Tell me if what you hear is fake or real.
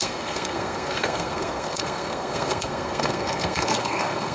fake